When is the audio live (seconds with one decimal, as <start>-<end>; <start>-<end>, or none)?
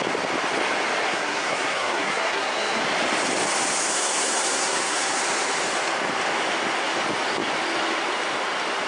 0.0-1.0; 2.8-3.9; 5.2-8.9